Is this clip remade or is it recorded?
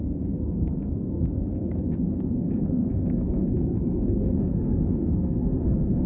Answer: remade